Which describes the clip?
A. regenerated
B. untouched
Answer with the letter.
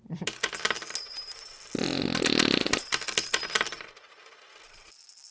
B